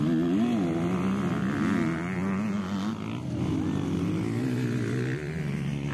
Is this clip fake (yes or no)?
no